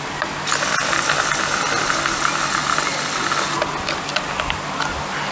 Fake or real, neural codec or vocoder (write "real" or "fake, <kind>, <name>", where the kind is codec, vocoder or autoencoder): real